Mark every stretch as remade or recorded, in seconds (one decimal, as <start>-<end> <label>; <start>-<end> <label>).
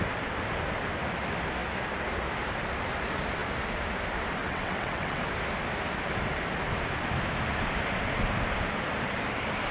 0.0-4.4 recorded; 4.4-5.2 remade; 5.2-9.7 recorded